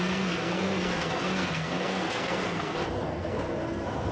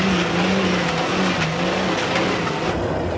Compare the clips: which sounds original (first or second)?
second